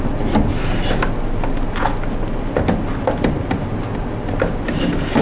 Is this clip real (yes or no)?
yes